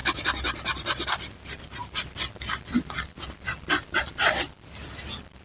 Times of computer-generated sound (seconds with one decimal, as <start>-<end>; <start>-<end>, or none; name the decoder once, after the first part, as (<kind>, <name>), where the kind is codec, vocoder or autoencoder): 0.0-1.3 (vocoder, BigVGAN v2); 1.8-2.7